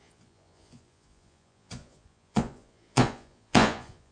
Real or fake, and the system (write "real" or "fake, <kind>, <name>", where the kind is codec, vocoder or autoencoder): fake, vocoder, Vocos